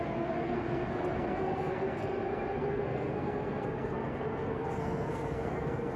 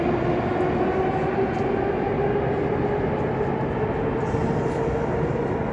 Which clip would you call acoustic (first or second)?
second